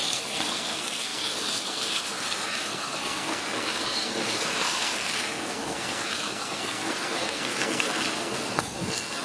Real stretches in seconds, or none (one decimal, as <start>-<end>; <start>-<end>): none